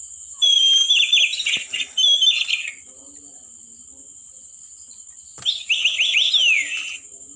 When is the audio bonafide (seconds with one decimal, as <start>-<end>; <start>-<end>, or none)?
0.0-2.5